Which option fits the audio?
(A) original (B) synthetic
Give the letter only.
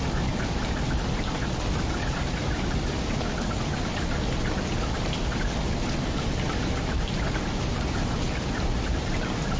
A